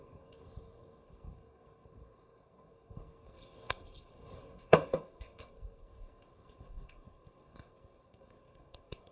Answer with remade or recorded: remade